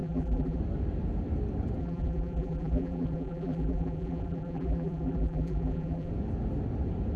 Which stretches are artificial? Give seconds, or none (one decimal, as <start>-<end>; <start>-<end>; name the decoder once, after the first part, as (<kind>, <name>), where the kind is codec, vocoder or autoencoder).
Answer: 0.0-0.6 (vocoder, BigVGAN v2); 1.8-6.1